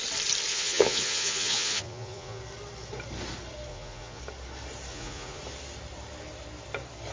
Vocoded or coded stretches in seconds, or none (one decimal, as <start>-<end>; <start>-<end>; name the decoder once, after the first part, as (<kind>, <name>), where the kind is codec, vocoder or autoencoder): 0.5-2.4 (vocoder, Vocos); 3.7-4.2; 4.9-5.4